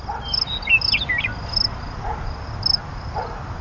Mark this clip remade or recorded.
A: recorded